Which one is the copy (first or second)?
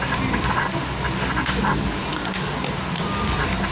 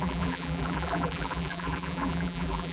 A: second